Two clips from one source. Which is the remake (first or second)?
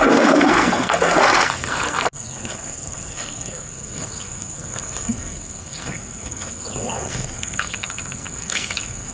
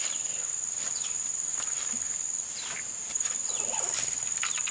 first